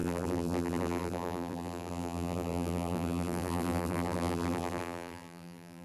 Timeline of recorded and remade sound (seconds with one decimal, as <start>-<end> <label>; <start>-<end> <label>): 0.0-5.8 remade